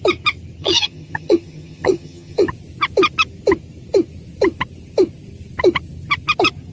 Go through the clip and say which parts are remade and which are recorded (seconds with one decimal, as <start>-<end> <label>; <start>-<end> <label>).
0.0-0.6 recorded; 0.6-2.5 remade; 2.5-6.7 recorded